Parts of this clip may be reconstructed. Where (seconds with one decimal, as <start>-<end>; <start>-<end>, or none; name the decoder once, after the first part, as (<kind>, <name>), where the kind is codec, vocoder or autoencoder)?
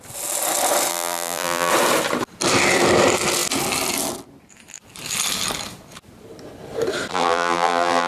0.9-1.7 (vocoder, BigVGAN v2); 7.1-8.1